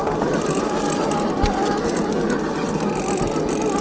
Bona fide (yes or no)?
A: yes